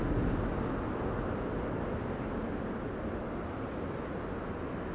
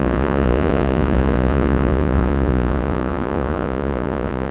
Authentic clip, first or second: first